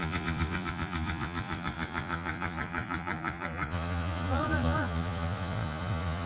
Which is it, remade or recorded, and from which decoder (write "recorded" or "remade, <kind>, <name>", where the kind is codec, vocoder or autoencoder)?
remade, vocoder, Vocos